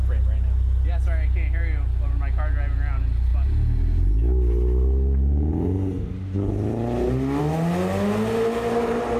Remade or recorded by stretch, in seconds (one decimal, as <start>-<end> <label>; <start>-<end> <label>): 0.0-9.2 recorded